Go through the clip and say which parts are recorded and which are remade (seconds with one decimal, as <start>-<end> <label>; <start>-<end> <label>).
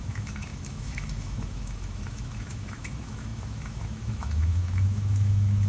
0.0-5.7 remade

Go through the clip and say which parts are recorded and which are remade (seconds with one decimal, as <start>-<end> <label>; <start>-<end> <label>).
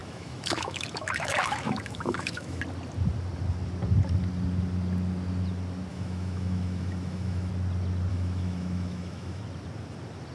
0.0-2.6 remade; 2.6-5.9 recorded; 5.9-7.5 remade; 7.5-8.1 recorded; 8.1-9.4 remade; 9.4-10.3 recorded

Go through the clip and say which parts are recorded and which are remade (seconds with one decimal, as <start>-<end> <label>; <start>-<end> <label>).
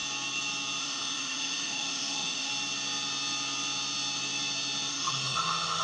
0.0-0.8 recorded; 0.8-2.5 remade; 2.5-4.9 recorded; 4.9-5.8 remade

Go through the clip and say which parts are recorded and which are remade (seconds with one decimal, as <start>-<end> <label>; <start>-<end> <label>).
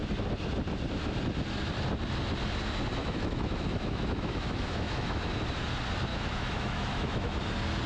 0.0-3.0 recorded; 3.0-5.3 remade; 5.3-6.1 recorded; 6.1-7.4 remade; 7.4-7.9 recorded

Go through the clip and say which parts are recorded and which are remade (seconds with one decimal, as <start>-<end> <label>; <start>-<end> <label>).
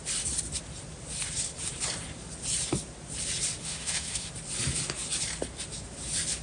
0.0-3.6 recorded; 3.6-4.3 remade; 4.3-6.4 recorded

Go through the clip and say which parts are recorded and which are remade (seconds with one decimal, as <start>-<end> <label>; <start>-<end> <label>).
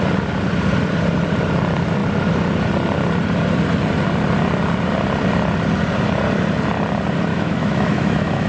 0.0-7.3 recorded; 7.3-8.5 remade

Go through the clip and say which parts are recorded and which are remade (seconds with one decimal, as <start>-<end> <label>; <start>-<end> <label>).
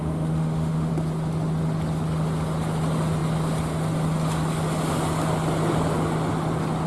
0.0-0.9 remade; 0.9-6.9 recorded